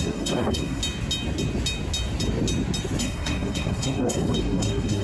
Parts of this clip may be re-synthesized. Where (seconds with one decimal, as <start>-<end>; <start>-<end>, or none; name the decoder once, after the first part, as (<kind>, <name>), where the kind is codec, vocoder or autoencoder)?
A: 0.0-0.8 (codec, SNAC); 3.0-5.0